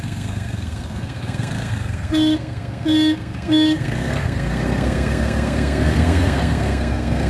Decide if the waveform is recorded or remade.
remade